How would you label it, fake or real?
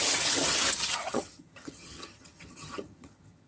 fake